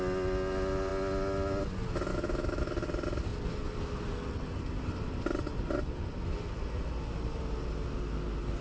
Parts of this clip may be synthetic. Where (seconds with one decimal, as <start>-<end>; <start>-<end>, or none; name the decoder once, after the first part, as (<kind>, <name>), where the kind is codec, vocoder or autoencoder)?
2.1-2.7 (autoencoder, DAC-VAE)